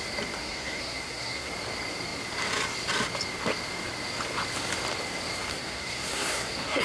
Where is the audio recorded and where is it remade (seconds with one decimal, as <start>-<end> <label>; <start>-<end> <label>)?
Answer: 0.0-0.4 recorded; 0.4-1.5 remade; 1.5-5.5 recorded; 5.5-6.8 remade

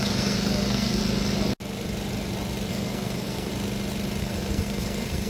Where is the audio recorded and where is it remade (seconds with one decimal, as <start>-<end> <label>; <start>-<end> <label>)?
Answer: 0.0-1.0 remade; 1.0-2.7 recorded; 2.7-3.5 remade; 3.5-4.2 recorded; 4.2-5.3 remade

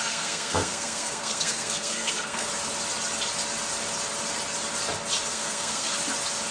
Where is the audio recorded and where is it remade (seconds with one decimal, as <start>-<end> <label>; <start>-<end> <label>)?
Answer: 0.0-2.5 remade; 2.5-5.3 recorded; 5.3-5.9 remade; 5.9-6.5 recorded

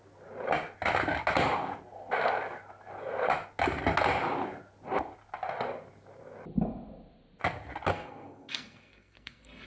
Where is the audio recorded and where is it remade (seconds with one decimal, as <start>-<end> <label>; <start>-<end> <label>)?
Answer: 0.0-7.9 recorded; 7.9-9.7 remade